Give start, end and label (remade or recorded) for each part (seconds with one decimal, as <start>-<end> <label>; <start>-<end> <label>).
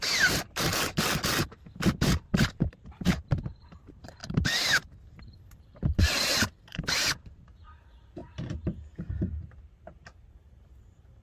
0.0-0.7 remade; 0.7-2.1 recorded; 2.1-8.2 remade; 8.2-9.2 recorded; 9.2-11.2 remade